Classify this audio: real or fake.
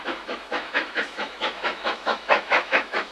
fake